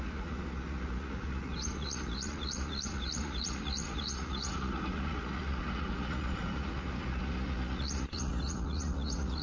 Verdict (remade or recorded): remade